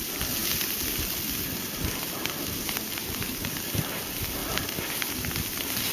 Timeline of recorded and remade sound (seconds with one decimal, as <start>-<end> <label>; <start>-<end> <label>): 0.0-0.4 recorded; 0.4-3.9 remade; 3.9-5.9 recorded